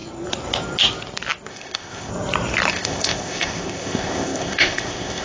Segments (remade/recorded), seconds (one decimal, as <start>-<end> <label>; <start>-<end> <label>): 0.0-1.5 recorded; 1.5-2.1 remade; 2.1-2.7 recorded; 2.7-5.2 remade